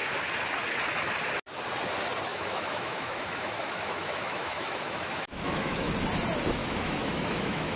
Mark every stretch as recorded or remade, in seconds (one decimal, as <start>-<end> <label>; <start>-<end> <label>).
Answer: 0.0-2.3 recorded; 2.3-5.9 remade; 5.9-6.6 recorded; 6.6-7.8 remade